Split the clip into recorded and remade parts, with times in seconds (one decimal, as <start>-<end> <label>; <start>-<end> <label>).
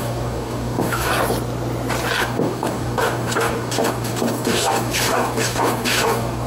0.0-1.1 remade; 1.1-2.2 recorded; 2.2-6.5 remade